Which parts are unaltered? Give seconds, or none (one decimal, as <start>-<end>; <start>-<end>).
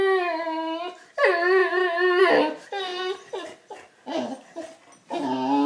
0.0-5.7